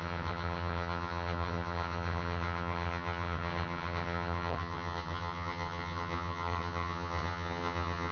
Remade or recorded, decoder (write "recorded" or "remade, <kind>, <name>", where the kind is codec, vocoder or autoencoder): remade, vocoder, HiFi-GAN